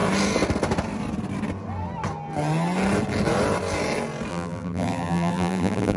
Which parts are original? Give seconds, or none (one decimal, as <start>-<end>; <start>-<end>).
0.0-4.3